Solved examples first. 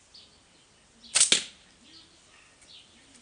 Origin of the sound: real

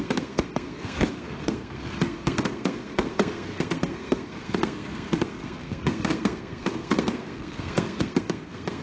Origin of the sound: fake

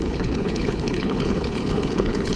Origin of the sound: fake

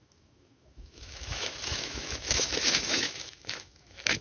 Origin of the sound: fake